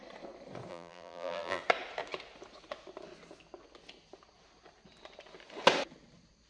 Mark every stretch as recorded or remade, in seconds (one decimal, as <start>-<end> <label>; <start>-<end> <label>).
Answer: 0.0-0.7 recorded; 0.7-1.6 remade; 1.6-6.5 recorded